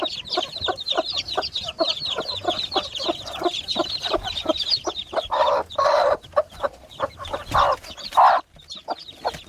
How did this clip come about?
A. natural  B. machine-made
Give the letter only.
A